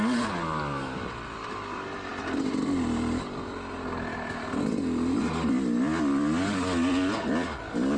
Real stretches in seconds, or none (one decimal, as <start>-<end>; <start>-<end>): 0.0-8.0